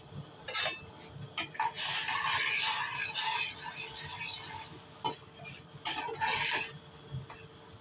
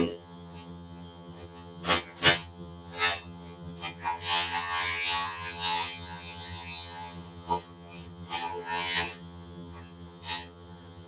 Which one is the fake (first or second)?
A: second